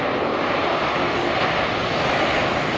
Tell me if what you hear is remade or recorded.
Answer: recorded